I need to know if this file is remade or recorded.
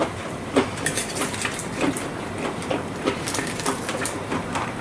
remade